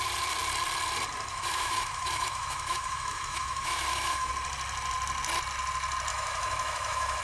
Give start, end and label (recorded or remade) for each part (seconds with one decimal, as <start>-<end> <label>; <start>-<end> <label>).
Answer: 0.0-1.3 recorded; 1.3-4.3 remade; 4.3-6.1 recorded; 6.1-7.2 remade